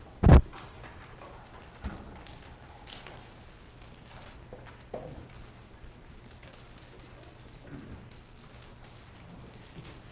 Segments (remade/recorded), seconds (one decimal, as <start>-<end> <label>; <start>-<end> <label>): 0.0-10.1 recorded